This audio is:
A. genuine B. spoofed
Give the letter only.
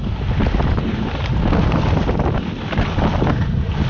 A